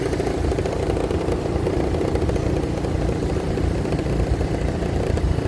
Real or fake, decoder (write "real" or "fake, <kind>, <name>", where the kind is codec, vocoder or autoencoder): real